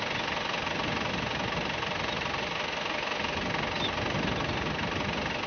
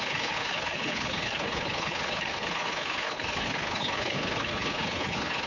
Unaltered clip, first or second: first